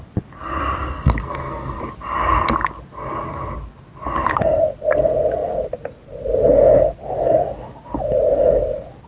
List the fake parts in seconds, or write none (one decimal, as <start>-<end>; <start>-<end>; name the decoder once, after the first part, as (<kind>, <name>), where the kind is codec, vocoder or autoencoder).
0.8-1.8 (codec, SNAC)